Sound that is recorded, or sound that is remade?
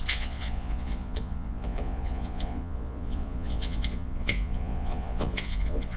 remade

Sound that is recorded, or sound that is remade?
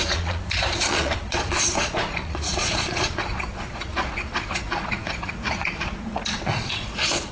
remade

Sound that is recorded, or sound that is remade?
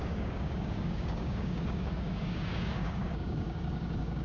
remade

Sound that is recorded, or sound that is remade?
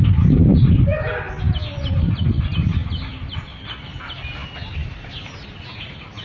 recorded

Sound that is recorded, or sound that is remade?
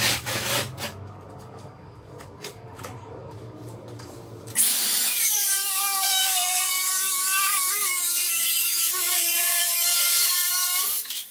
remade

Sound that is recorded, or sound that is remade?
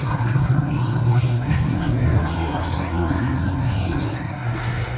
remade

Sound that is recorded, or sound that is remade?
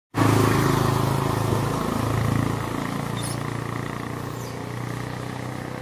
recorded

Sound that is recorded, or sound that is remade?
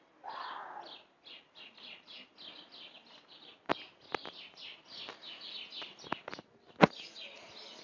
recorded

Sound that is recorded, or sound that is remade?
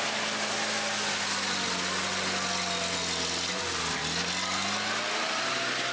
recorded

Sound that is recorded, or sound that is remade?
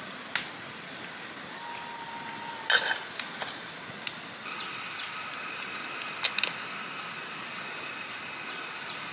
recorded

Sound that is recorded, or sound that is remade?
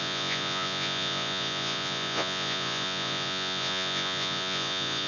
remade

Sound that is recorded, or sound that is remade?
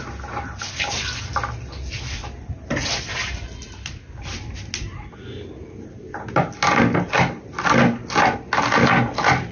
recorded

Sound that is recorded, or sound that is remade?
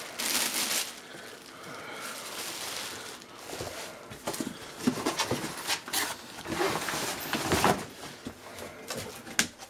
recorded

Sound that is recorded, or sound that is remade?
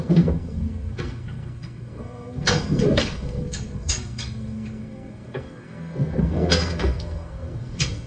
remade